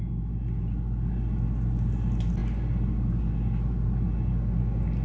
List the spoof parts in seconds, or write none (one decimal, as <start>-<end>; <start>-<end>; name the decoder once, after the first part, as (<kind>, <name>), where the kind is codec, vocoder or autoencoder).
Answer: none